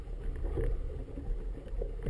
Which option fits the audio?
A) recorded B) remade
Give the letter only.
A